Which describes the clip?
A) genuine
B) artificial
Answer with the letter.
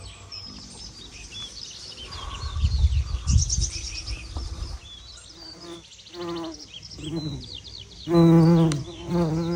A